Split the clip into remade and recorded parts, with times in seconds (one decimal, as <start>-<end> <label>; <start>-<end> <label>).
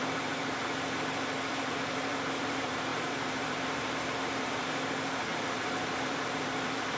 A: 0.0-0.6 remade; 0.6-1.5 recorded; 1.5-5.3 remade; 5.3-5.8 recorded; 5.8-7.0 remade